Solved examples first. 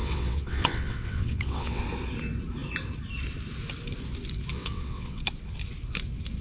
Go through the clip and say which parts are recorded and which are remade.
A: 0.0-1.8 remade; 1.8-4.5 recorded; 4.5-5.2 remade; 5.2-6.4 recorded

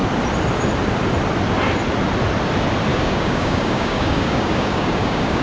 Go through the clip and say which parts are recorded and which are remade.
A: 0.0-2.9 recorded; 2.9-5.4 remade

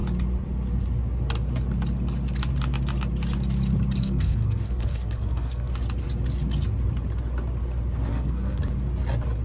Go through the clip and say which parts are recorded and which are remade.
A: 0.0-4.0 recorded; 4.0-5.7 remade; 5.7-8.1 recorded; 8.1-8.6 remade; 8.6-9.4 recorded

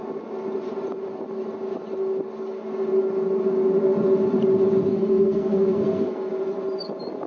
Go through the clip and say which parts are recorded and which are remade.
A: 0.0-4.9 recorded; 4.9-6.3 remade; 6.3-7.3 recorded

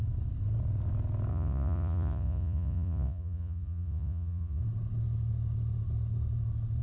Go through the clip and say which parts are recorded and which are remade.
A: 0.0-1.3 recorded; 1.3-4.6 remade; 4.6-6.8 recorded